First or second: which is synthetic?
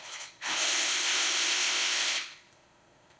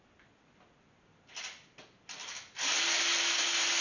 first